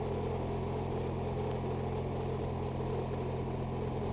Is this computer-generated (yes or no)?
no